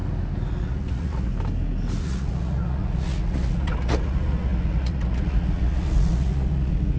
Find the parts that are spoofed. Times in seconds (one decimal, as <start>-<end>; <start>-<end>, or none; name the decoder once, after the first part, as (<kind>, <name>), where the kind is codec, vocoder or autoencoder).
0.5-1.3 (vocoder, Vocos); 2.0-7.0